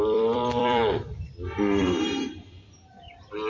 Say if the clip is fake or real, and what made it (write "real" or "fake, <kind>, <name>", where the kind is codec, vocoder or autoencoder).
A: fake, vocoder, BigVGAN v2